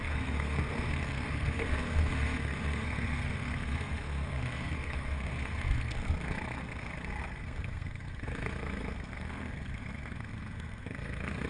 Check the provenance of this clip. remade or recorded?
remade